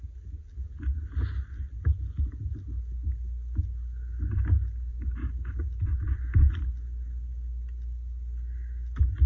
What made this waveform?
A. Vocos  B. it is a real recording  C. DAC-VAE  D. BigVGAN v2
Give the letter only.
B